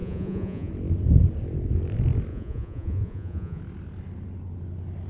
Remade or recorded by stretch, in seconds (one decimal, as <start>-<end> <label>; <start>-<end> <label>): 0.0-0.7 remade; 0.7-2.3 recorded; 2.3-3.6 remade; 3.6-5.1 recorded